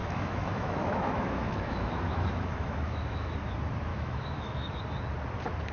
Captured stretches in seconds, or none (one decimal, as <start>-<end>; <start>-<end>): 3.3-3.9; 4.8-5.7